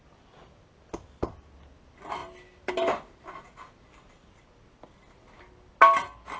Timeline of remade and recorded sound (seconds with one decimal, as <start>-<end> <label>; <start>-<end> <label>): 0.0-6.4 recorded